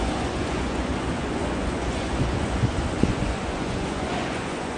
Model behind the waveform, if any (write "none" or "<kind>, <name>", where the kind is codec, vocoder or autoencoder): vocoder, Vocos